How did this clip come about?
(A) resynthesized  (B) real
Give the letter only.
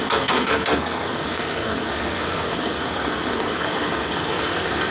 A